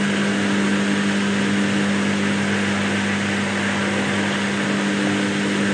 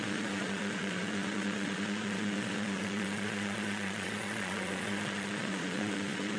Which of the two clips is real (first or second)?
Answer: first